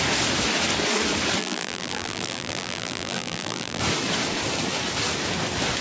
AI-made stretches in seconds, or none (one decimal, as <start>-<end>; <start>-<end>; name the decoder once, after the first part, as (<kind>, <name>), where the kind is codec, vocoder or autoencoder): 1.4-3.8 (vocoder, BigVGAN v2)